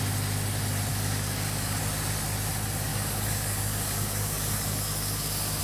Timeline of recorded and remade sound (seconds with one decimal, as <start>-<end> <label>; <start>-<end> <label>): 0.0-0.9 recorded; 0.9-1.8 remade; 1.8-2.9 recorded; 2.9-5.6 remade